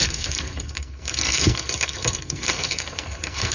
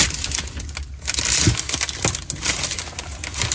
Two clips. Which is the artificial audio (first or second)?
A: first